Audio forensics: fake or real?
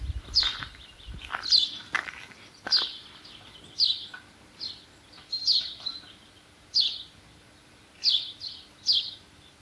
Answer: real